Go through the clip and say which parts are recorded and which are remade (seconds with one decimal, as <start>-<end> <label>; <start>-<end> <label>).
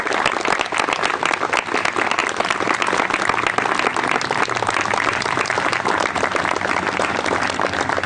0.0-8.1 recorded